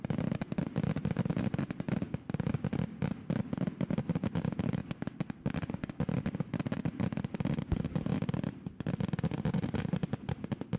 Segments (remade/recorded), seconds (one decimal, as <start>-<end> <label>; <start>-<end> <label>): 0.0-4.8 recorded; 4.8-5.9 remade; 5.9-10.8 recorded